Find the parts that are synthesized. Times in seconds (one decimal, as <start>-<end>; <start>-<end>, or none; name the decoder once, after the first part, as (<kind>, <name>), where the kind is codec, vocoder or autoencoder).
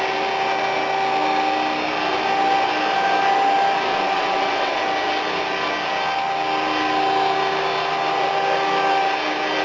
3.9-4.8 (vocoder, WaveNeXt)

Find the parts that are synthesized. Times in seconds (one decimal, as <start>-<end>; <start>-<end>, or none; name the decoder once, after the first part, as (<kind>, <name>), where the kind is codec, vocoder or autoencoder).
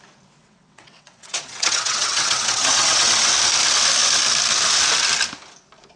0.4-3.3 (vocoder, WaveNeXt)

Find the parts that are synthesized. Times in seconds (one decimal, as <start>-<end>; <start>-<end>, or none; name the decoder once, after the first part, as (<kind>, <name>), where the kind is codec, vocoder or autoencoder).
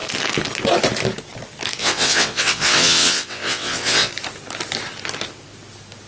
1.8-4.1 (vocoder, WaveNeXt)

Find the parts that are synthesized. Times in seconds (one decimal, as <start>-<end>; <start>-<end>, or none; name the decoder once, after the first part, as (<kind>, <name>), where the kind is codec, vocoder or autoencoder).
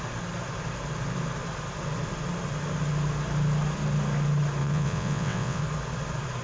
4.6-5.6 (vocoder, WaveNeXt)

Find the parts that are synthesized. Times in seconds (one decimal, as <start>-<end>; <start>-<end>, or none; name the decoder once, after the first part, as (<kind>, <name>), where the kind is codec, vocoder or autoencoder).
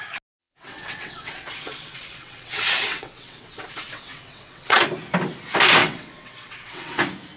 0.4-4.8 (vocoder, WaveNeXt); 5.8-7.0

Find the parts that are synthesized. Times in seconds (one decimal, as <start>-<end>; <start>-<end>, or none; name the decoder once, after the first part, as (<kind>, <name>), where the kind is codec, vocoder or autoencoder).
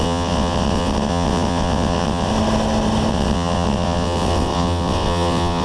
0.0-2.3 (vocoder, WaveNeXt); 3.1-5.6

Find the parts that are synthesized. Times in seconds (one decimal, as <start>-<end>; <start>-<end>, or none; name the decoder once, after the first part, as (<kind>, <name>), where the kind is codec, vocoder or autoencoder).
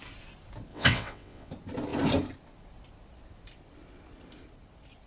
0.7-1.5 (vocoder, WaveNeXt)